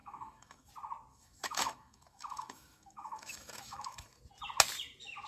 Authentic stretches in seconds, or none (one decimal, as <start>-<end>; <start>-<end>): 0.7-1.1; 4.2-5.3